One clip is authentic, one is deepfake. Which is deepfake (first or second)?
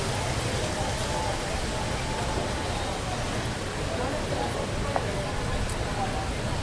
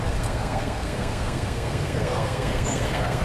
second